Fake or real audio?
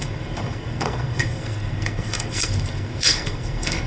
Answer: fake